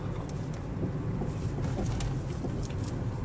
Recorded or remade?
recorded